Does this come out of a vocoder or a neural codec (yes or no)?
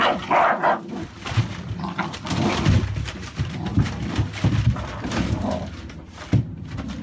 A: yes